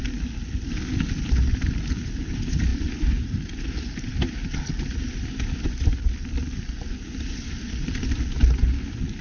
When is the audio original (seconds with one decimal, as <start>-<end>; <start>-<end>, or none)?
0.0-9.2